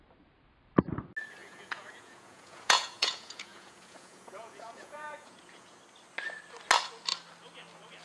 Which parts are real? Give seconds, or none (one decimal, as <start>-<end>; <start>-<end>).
0.0-1.4; 5.8-8.0